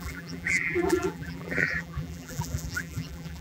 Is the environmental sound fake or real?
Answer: fake